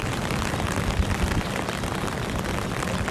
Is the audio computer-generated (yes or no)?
yes